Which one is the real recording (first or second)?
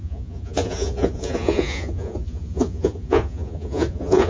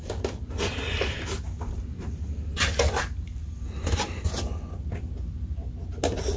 second